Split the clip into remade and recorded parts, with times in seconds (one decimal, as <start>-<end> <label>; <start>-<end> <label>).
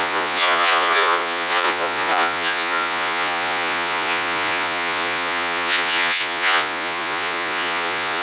0.0-8.2 remade